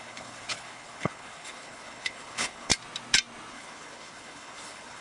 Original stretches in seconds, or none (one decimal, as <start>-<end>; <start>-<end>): 2.7-3.5